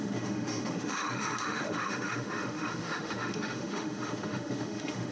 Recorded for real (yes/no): no